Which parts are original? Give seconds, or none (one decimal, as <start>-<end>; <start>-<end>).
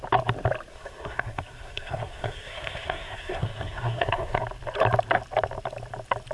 0.0-0.7; 4.4-6.3